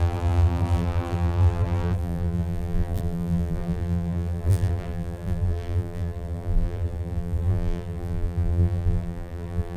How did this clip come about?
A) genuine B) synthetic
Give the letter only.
B